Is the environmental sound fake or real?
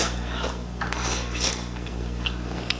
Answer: fake